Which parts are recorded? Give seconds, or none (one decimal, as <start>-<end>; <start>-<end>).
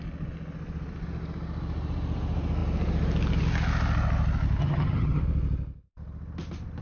0.0-4.6; 5.2-6.8